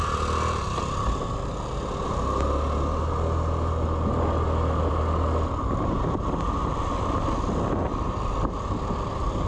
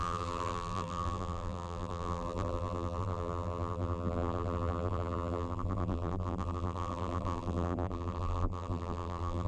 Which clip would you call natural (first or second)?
first